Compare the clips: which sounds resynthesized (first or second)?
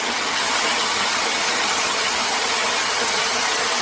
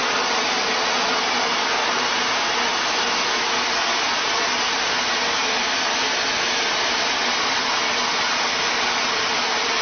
first